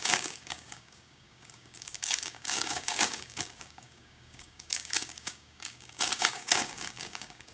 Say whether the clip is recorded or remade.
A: remade